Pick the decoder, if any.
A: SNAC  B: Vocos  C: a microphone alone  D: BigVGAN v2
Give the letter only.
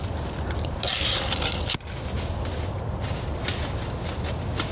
C